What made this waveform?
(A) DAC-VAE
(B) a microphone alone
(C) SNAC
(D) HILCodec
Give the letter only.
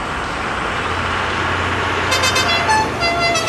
B